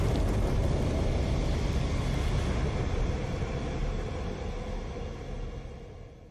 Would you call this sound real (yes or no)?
yes